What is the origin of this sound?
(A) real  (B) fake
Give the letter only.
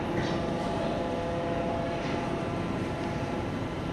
B